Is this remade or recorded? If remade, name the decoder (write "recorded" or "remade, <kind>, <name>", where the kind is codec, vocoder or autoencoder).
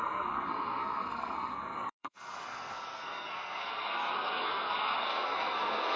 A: remade, codec, SNAC